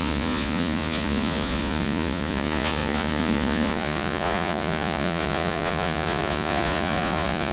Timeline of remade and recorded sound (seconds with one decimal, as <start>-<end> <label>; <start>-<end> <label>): 0.0-7.5 remade